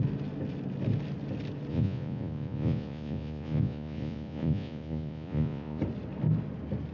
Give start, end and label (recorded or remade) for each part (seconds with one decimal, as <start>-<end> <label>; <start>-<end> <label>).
0.0-1.7 recorded; 1.7-5.8 remade; 5.8-6.9 recorded